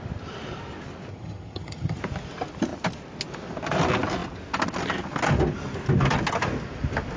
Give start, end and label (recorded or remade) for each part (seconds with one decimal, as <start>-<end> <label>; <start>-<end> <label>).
0.0-1.1 recorded; 1.1-2.0 remade; 2.0-7.2 recorded